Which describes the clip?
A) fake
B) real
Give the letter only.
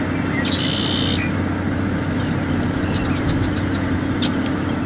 B